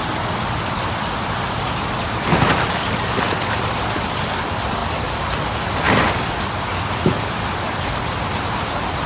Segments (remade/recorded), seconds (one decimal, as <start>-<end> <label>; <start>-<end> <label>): 0.0-9.1 recorded